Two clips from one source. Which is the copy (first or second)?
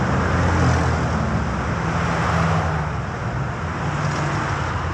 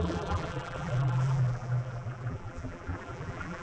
second